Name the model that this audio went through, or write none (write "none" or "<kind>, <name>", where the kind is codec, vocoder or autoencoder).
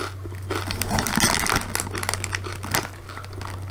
none